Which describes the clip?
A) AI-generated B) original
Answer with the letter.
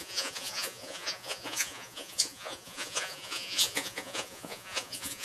A